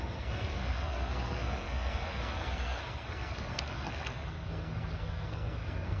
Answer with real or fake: fake